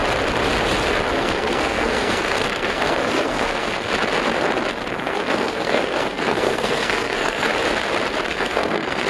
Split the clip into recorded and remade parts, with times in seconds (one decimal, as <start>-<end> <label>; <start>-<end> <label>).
0.0-1.1 recorded; 1.1-3.9 remade; 3.9-4.9 recorded; 4.9-7.5 remade; 7.5-8.3 recorded; 8.3-9.1 remade